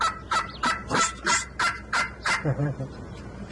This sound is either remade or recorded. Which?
remade